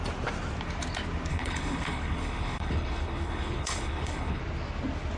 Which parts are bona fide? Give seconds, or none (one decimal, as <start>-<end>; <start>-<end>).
0.0-1.3; 4.4-5.2